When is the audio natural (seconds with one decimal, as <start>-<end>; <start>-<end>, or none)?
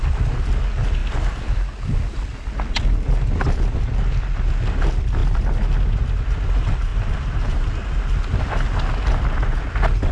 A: 0.0-6.9; 7.7-10.1